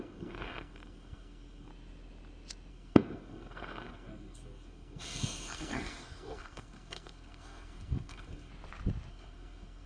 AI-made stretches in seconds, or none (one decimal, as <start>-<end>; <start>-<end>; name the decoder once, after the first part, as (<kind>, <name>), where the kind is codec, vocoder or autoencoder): 0.0-1.7 (codec, SNAC); 2.7-8.5; 9.1-9.9